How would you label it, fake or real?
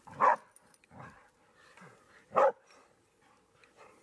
real